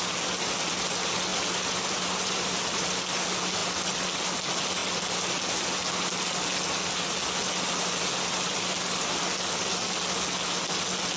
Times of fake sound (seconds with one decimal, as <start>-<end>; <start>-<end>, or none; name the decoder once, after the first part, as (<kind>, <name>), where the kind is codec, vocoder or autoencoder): 1.3-3.0 (vocoder, BigVGAN v2)